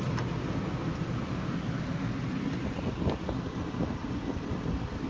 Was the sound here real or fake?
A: real